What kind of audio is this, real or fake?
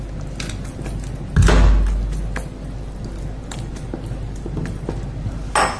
real